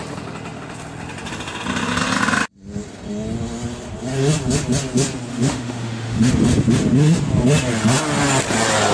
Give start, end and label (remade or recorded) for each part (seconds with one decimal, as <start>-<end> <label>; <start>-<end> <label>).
0.0-5.3 recorded; 5.3-6.3 remade; 6.3-8.9 recorded